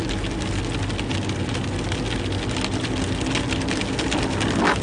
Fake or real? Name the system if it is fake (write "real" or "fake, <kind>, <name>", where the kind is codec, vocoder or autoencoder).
real